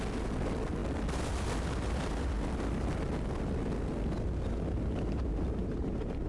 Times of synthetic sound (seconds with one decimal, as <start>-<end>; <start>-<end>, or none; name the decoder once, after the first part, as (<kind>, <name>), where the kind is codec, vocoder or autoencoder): 5.6-6.3 (vocoder, BigVGAN v2)